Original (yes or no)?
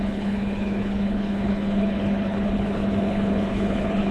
no